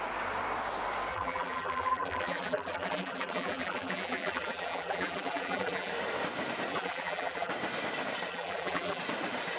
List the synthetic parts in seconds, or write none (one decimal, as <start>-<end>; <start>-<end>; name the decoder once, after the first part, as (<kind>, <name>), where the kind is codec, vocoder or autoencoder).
1.1-5.9 (vocoder, BigVGAN v2); 6.7-7.5; 8.3-9.0